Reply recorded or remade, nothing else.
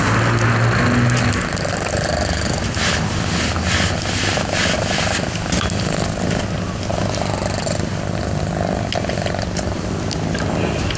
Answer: recorded